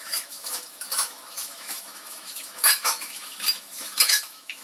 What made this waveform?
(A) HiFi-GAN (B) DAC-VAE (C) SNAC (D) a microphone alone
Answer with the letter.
B